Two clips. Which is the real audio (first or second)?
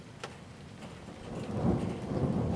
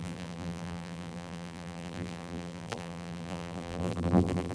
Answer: first